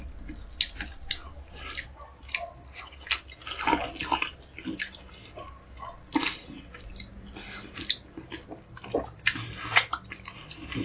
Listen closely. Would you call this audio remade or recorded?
recorded